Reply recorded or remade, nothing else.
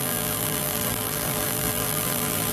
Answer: remade